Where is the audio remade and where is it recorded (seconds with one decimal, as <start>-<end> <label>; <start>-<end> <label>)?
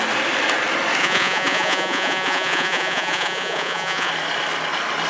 0.0-1.0 recorded; 1.0-4.1 remade; 4.1-5.1 recorded